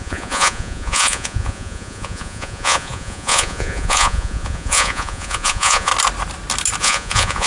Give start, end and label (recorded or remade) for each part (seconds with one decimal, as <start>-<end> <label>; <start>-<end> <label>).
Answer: 0.0-5.9 remade; 5.9-6.8 recorded; 6.8-7.5 remade